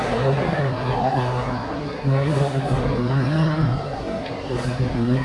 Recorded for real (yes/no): no